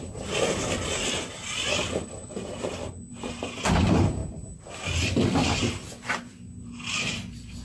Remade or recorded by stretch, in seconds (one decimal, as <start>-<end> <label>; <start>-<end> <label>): 0.0-2.2 recorded; 2.2-3.1 remade; 3.1-7.6 recorded